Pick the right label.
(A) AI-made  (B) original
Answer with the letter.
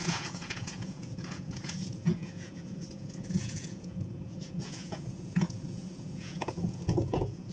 A